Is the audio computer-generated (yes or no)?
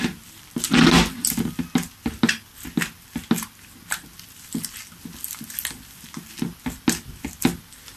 no